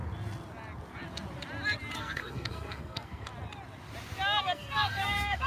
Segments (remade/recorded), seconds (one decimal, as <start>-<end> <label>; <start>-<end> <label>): 0.0-2.0 recorded; 2.0-3.3 remade; 3.3-4.4 recorded; 4.4-5.5 remade